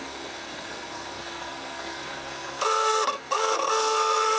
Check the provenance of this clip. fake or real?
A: fake